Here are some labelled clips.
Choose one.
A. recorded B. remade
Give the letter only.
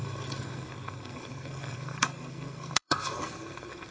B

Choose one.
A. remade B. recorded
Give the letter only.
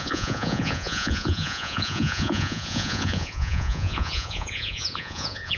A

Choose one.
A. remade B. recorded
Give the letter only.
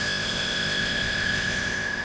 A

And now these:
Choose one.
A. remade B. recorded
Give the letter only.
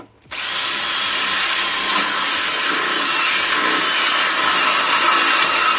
B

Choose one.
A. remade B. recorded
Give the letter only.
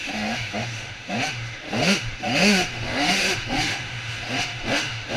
A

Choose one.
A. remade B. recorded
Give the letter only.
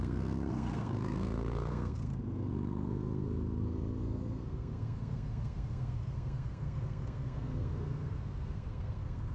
A